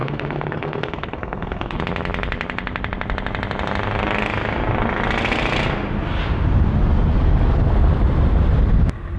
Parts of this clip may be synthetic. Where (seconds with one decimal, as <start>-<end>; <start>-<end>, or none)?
0.0-1.8